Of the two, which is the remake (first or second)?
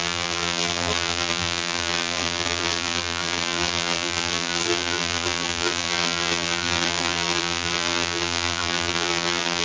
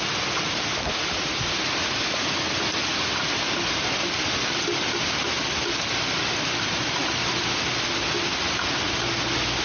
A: first